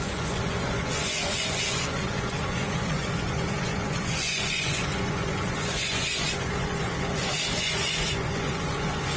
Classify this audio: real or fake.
fake